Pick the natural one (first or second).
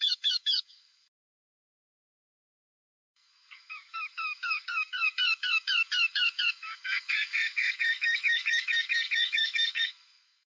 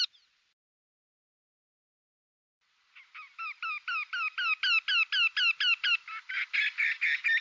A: second